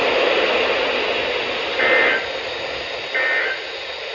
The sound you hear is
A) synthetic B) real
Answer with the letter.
B